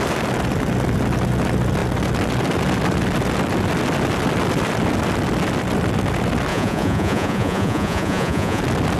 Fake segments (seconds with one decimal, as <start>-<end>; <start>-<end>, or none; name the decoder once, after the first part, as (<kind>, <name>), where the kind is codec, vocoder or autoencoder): 6.5-8.6 (vocoder, Vocos)